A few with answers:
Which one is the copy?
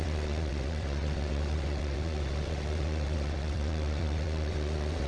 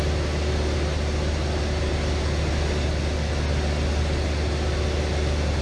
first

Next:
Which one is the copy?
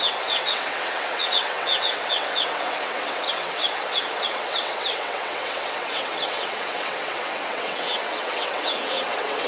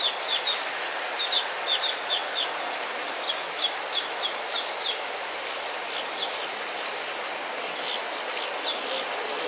first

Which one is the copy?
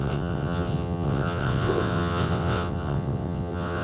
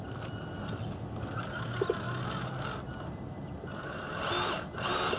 first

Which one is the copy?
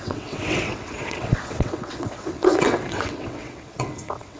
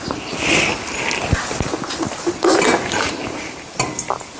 first